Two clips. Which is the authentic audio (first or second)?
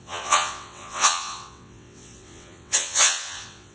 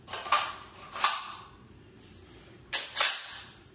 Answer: second